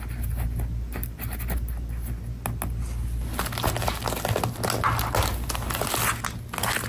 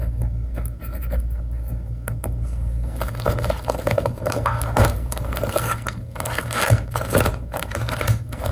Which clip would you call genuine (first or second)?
first